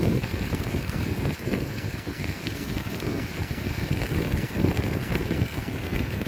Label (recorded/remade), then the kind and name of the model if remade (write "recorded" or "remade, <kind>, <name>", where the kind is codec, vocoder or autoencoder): remade, codec, SNAC